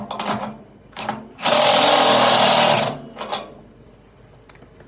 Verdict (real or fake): real